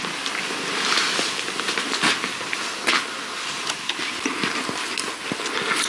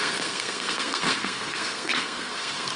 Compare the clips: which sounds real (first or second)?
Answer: first